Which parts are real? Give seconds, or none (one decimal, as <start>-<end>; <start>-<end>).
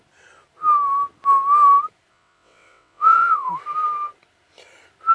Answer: 0.0-2.1; 3.5-5.1